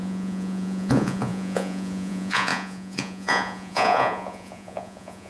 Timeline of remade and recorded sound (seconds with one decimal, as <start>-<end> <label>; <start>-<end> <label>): 0.0-5.3 remade